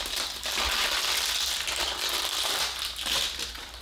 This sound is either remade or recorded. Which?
recorded